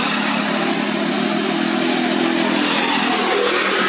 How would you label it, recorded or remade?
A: recorded